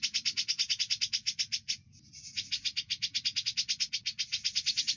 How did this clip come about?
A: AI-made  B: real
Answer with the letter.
B